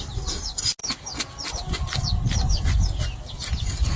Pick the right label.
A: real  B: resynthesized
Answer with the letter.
A